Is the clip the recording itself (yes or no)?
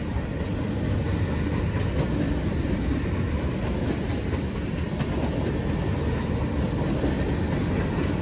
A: yes